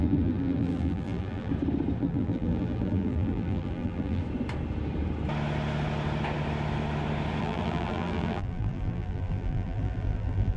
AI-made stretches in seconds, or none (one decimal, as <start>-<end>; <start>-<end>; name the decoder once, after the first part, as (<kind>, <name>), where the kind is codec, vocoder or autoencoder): 0.0-1.5 (vocoder, BigVGAN v2); 2.0-4.2; 7.4-10.6